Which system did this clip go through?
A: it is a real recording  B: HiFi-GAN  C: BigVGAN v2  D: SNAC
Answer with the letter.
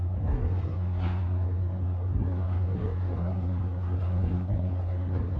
D